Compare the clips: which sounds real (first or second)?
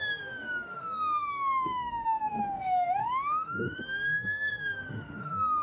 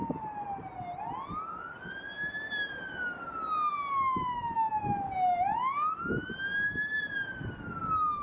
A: second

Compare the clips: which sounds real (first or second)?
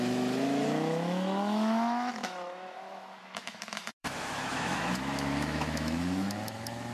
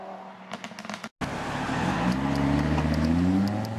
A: second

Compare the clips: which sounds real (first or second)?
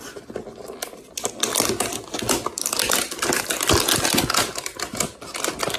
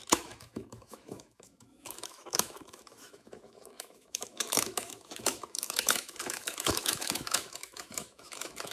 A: first